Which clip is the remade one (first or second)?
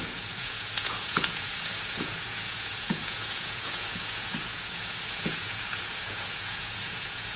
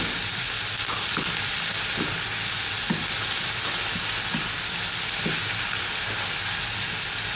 first